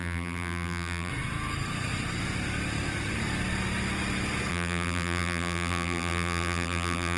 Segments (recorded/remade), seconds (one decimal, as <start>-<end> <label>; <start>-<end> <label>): 0.0-1.1 remade; 1.1-4.5 recorded; 4.5-7.2 remade